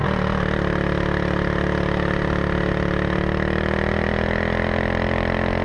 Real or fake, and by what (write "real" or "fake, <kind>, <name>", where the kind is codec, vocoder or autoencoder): real